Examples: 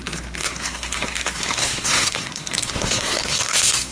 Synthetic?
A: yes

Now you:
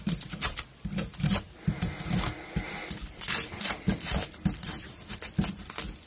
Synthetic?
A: yes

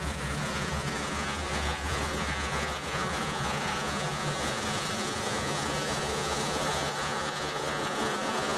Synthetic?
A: yes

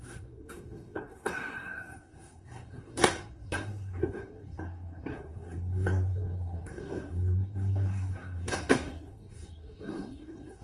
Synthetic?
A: yes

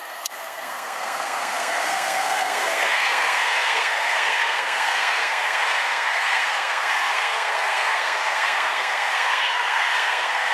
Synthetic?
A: yes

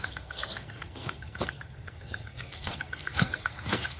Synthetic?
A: yes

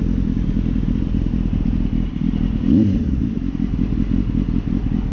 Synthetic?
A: yes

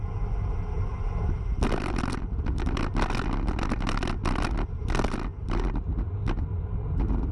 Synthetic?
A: no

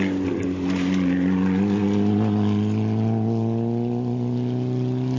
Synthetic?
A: no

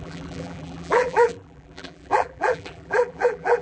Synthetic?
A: yes